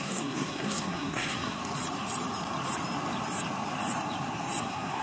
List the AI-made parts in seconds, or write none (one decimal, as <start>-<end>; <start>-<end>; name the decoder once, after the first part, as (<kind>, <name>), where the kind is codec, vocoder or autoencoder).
0.0-1.6 (codec, SNAC); 4.6-5.0